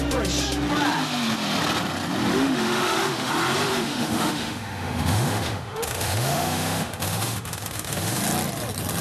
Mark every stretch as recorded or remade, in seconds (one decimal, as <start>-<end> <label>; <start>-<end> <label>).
0.0-2.3 recorded; 2.3-3.3 remade; 3.3-3.7 recorded; 3.7-8.2 remade; 8.2-9.0 recorded